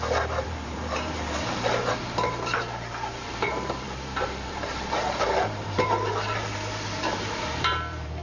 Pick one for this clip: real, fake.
fake